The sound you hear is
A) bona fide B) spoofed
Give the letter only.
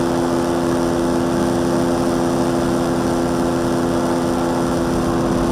A